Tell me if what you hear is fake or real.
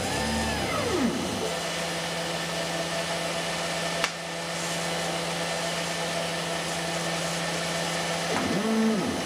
real